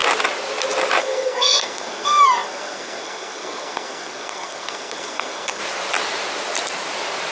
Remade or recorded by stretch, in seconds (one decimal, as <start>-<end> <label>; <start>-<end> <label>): 0.0-1.0 recorded; 1.0-5.6 remade; 5.6-7.3 recorded